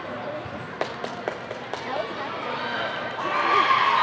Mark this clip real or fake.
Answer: real